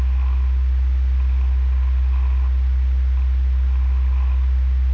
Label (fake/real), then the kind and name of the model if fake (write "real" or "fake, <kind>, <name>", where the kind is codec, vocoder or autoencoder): real